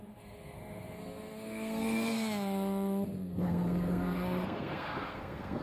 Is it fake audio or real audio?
fake